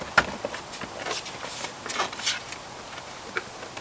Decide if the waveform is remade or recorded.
recorded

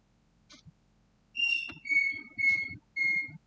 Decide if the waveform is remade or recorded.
recorded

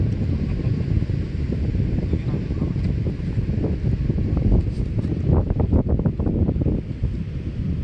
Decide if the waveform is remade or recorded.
recorded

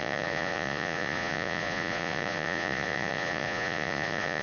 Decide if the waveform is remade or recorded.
remade